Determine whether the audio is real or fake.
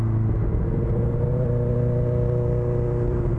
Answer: real